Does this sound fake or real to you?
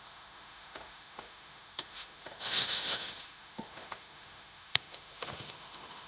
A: fake